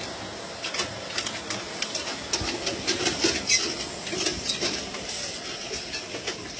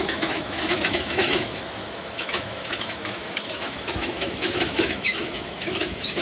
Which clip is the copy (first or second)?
second